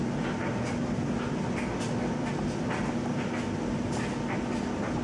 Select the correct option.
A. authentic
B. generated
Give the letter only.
A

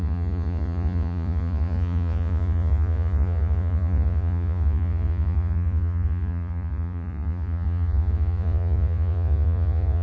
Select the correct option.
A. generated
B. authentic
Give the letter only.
A